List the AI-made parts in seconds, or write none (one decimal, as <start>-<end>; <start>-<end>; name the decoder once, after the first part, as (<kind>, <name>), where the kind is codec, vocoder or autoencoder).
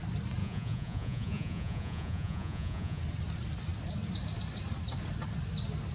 0.4-3.0 (vocoder, Vocos)